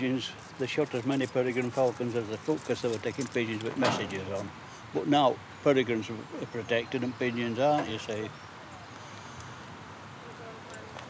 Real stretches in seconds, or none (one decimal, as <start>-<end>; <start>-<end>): 0.0-0.7; 1.5-2.4; 4.7-11.1